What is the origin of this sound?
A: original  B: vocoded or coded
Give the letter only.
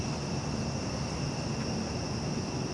A